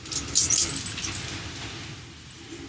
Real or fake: real